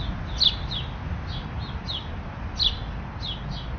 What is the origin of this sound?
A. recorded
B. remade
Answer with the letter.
A